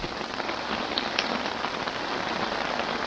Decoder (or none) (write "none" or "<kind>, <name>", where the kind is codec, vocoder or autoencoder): none